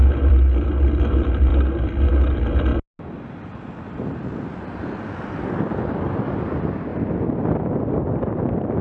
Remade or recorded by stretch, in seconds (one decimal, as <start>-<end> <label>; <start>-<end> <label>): 0.0-1.5 remade; 1.5-2.1 recorded; 2.1-2.7 remade; 2.7-5.9 recorded; 5.9-6.9 remade; 6.9-7.4 recorded; 7.4-8.8 remade